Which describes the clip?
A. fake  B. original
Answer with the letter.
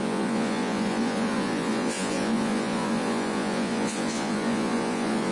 A